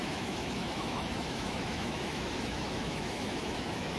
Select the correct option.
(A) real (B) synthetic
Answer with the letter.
B